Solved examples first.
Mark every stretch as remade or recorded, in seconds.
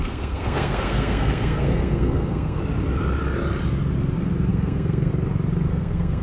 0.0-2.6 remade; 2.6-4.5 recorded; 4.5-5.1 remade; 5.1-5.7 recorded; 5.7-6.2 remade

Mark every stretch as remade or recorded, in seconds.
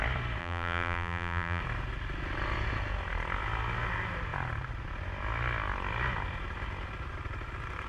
0.0-0.4 recorded; 0.4-1.6 remade; 1.6-7.9 recorded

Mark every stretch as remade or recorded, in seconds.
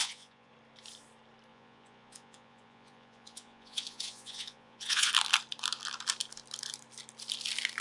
0.0-0.5 remade; 0.5-1.5 recorded; 1.5-5.1 remade; 5.1-7.8 recorded